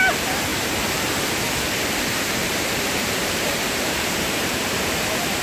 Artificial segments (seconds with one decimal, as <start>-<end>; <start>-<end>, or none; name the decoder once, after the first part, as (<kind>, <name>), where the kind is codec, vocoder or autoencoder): 0.5-1.1 (vocoder, BigVGAN v2); 2.4-5.4